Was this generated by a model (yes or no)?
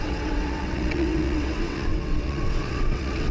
yes